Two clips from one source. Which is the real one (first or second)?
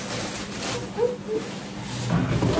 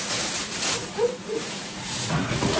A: first